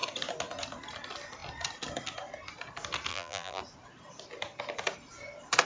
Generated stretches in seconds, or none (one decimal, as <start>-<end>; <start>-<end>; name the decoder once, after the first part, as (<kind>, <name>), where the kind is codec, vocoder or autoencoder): 3.1-3.6 (vocoder, BigVGAN v2)